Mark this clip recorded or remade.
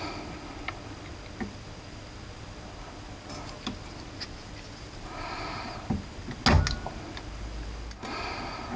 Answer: recorded